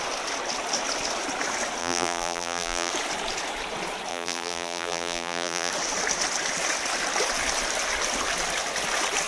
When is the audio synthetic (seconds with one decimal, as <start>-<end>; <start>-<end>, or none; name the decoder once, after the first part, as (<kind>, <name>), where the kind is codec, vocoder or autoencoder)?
1.8-2.9 (vocoder, BigVGAN v2); 4.1-5.7